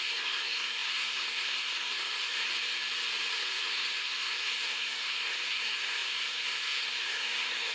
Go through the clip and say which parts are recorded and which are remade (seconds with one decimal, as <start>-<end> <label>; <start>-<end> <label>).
0.0-2.5 remade; 2.5-3.3 recorded; 3.3-7.7 remade